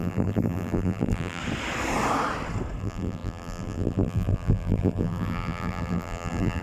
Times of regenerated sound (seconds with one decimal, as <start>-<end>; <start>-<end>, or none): 0.0-1.4; 2.8-6.6